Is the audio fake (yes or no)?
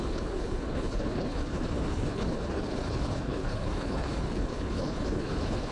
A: yes